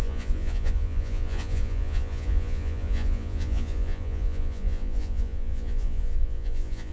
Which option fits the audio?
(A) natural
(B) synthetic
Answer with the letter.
B